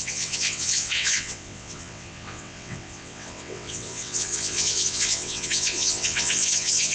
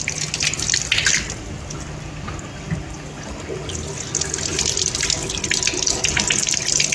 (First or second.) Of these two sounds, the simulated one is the first